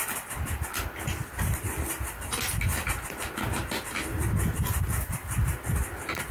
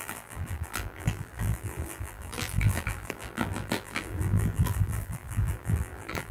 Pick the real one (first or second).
first